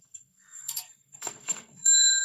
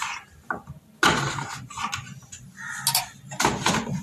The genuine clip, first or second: second